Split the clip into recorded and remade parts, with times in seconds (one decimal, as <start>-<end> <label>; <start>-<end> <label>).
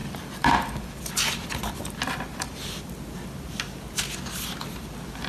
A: 0.0-1.1 remade; 1.1-2.3 recorded; 2.3-2.8 remade; 2.8-5.3 recorded